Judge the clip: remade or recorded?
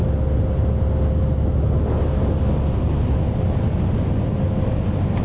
recorded